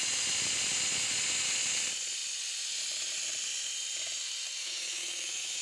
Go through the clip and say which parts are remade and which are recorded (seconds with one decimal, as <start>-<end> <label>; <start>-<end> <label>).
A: 0.0-4.6 recorded; 4.6-5.6 remade